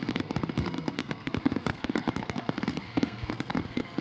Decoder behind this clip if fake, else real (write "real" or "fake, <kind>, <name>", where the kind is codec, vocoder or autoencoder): fake, codec, SNAC